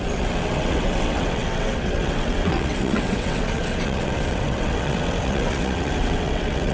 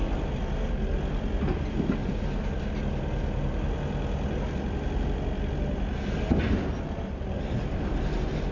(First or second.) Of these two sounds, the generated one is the first